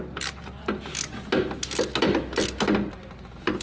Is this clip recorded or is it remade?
recorded